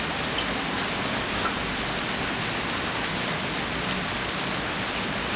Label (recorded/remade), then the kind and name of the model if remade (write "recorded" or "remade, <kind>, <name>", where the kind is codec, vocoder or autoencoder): recorded